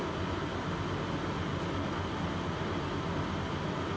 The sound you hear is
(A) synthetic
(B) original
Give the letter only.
B